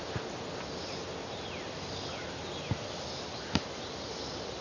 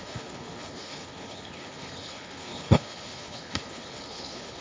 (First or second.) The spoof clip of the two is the second